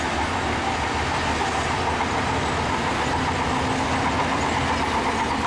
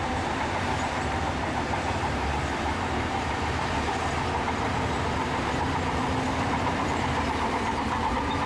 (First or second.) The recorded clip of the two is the first